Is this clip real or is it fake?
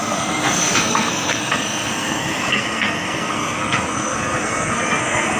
fake